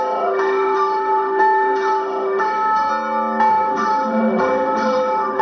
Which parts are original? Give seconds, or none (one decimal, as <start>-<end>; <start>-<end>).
2.9-3.5

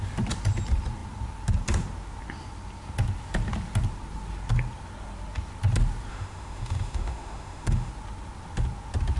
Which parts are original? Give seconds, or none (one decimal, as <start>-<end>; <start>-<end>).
0.0-6.1; 7.9-9.2

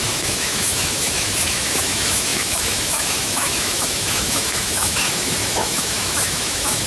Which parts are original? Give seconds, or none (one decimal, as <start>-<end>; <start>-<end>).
none

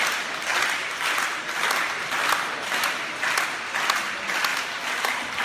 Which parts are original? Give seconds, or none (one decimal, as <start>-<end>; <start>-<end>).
0.0-5.4

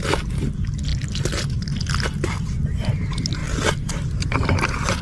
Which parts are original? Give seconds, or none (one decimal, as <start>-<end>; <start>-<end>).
0.0-5.0

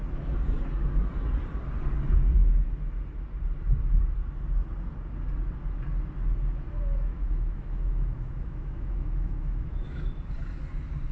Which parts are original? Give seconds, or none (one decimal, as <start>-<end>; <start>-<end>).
0.0-7.1; 10.1-11.1

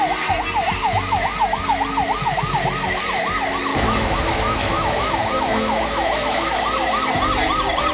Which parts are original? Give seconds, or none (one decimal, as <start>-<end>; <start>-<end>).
0.0-3.7; 6.5-7.9

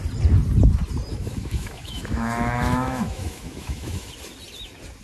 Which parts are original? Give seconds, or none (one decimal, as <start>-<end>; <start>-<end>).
0.0-1.1; 4.1-5.0